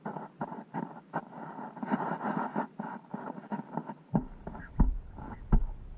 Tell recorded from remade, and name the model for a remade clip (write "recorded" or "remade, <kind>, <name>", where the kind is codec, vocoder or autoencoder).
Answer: remade, vocoder, BigVGAN v2